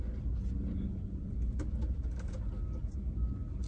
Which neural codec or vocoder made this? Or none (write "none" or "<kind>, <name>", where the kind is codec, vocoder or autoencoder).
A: none